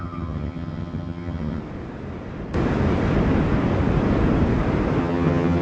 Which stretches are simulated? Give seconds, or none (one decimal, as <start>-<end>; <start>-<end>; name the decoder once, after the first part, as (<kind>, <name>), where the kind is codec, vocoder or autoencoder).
0.0-1.6 (vocoder, HiFi-GAN); 5.0-5.6